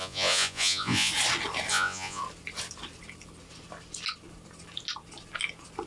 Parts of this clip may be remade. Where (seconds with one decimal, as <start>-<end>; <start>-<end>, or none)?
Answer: 0.0-1.1; 1.7-2.2